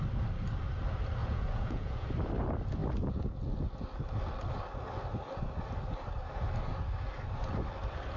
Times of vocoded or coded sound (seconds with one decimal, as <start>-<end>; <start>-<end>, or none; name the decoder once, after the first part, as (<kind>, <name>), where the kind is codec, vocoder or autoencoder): 1.2-2.1 (vocoder, Vocos)